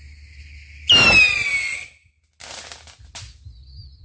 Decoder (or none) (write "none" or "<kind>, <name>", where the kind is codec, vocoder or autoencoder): none